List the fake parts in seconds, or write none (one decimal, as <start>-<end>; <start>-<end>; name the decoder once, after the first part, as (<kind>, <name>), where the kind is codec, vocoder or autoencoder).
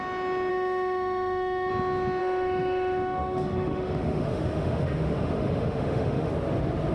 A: 0.5-1.7 (autoencoder, DAC-VAE); 2.2-6.3